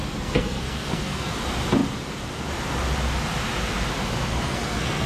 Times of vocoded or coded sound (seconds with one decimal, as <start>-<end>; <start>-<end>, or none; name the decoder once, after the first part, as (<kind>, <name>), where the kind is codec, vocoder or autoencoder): 0.0-1.3 (codec, SNAC); 4.3-5.1